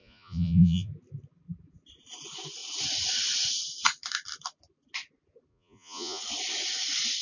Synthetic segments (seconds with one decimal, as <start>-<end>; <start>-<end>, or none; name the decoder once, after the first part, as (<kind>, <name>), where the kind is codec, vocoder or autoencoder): 0.0-0.9 (vocoder, Vocos); 5.5-6.2